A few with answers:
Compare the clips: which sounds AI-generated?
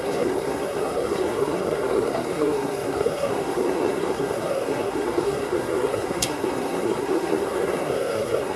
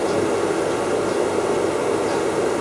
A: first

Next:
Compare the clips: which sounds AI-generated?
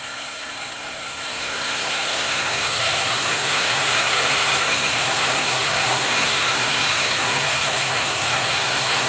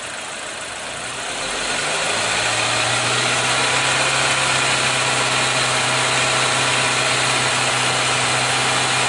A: first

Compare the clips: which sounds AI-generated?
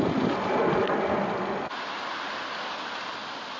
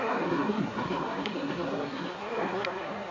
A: second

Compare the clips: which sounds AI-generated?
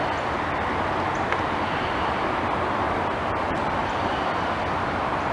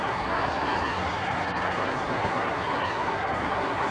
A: second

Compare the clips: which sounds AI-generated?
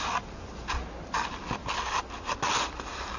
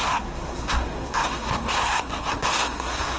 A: second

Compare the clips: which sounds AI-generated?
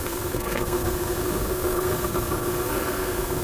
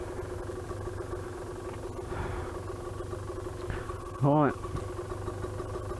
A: first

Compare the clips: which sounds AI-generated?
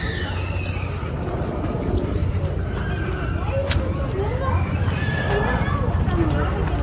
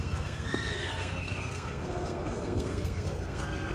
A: second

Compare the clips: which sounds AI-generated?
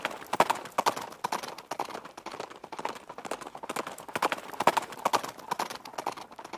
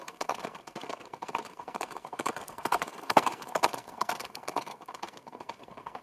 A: second